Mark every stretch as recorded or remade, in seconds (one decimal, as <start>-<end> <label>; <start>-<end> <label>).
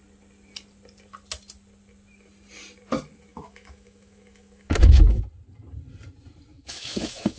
0.0-3.3 recorded; 3.3-5.2 remade; 5.2-6.5 recorded; 6.5-7.4 remade